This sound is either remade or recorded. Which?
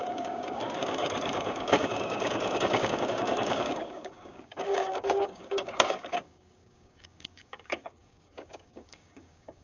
remade